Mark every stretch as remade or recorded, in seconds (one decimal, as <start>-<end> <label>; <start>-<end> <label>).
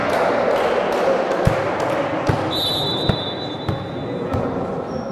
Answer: 0.0-5.1 recorded